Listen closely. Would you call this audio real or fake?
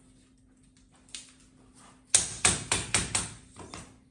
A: real